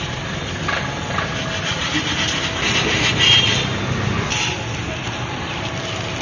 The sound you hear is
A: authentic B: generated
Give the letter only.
A